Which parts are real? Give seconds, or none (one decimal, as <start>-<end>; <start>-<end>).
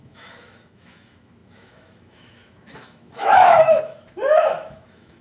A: none